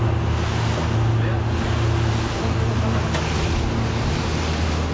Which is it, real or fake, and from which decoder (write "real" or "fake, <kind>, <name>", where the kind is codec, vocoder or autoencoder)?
real